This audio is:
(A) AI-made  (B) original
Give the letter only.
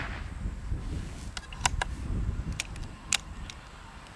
B